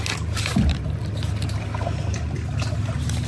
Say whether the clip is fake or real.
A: real